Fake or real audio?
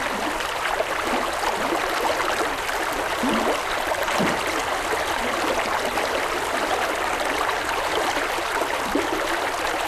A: real